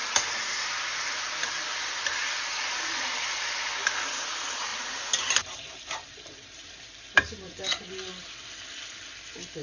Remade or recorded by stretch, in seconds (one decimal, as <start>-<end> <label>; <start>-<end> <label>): 0.0-4.7 recorded; 4.7-8.1 remade; 8.1-9.6 recorded